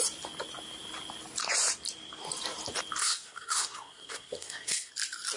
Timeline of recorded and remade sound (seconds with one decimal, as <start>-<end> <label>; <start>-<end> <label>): 0.0-3.0 recorded; 3.0-4.9 remade; 4.9-5.4 recorded